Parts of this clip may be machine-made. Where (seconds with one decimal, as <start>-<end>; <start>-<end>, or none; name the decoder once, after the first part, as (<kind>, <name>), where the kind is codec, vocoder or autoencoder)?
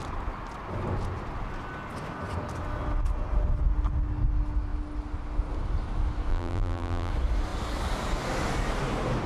6.3-7.1 (vocoder, BigVGAN v2)